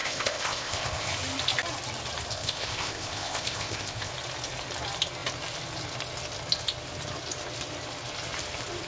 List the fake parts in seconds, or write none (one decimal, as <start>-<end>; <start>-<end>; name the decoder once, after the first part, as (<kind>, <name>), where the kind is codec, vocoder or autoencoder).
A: 0.0-1.1 (codec, ZipCodec); 2.3-4.1